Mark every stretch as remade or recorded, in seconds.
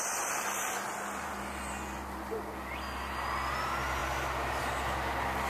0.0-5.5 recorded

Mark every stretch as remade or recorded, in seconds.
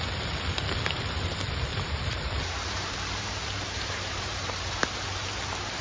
0.0-1.7 recorded; 1.7-5.2 remade; 5.2-5.8 recorded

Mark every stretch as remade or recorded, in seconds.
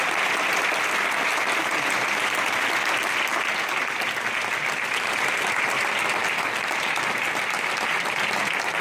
0.0-6.2 recorded; 6.2-6.8 remade; 6.8-8.8 recorded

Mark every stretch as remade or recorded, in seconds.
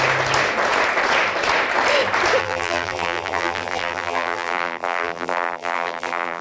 0.0-2.4 recorded; 2.4-6.4 remade